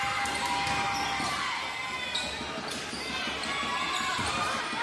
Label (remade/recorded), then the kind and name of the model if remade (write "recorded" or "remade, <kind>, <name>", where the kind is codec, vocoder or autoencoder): recorded